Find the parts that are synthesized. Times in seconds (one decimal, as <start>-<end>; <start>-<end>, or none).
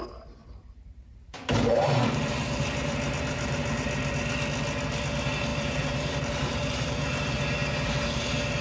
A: 0.4-4.3; 5.5-7.9